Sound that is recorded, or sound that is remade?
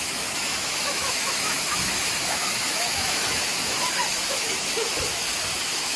remade